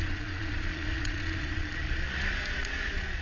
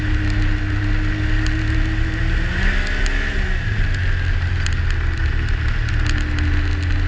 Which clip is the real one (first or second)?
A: second